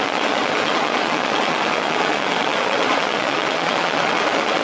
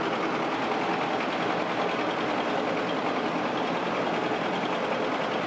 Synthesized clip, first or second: first